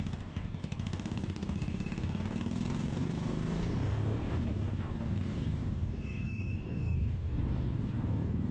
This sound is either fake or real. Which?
fake